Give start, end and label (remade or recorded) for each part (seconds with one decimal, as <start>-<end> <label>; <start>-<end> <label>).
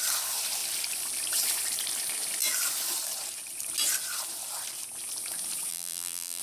0.0-5.7 recorded; 5.7-6.4 remade